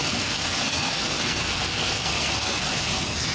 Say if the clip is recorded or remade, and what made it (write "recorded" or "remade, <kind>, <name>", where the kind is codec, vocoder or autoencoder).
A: remade, codec, SNAC